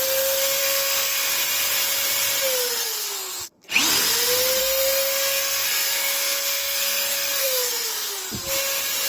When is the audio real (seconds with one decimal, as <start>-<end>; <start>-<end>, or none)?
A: 0.0-0.6; 1.3-2.8; 3.7-4.6; 8.2-9.1